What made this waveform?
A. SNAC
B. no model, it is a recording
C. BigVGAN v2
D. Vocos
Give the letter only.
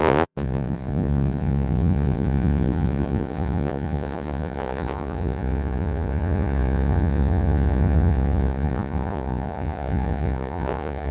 D